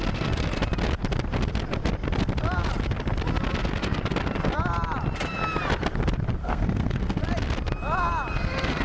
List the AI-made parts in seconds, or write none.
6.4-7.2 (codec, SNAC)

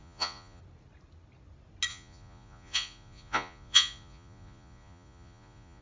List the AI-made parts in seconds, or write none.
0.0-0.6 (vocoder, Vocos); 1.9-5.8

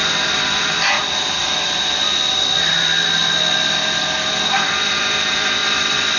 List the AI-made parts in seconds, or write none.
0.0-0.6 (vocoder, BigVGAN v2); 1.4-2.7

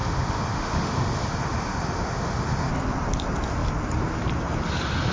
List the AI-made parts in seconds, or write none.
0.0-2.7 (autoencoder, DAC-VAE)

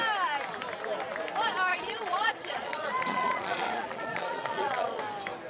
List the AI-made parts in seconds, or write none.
1.7-5.0 (vocoder, Vocos)

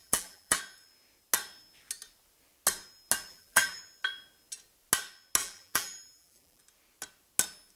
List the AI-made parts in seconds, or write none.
0.0-0.6 (vocoder, BigVGAN v2); 3.3-3.8; 5.4-6.6

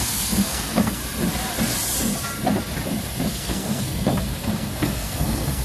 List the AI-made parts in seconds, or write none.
0.0-1.0 (codec, SNAC); 3.2-5.6